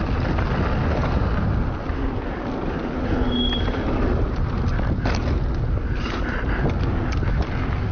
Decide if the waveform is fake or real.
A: real